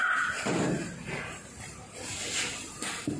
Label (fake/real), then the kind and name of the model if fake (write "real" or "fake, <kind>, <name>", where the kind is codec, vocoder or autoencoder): real